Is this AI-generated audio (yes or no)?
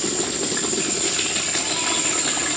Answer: no